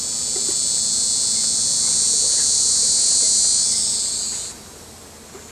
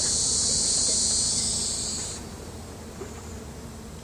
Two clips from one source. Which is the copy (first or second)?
second